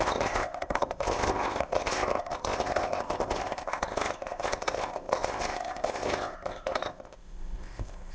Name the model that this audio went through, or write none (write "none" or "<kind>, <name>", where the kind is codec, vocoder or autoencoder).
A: codec, ZipCodec